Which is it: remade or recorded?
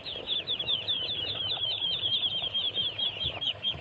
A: remade